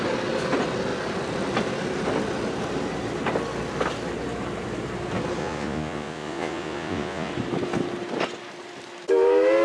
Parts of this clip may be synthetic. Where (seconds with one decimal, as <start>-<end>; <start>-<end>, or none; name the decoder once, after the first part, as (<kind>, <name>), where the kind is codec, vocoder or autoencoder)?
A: 5.4-7.3 (vocoder, Vocos)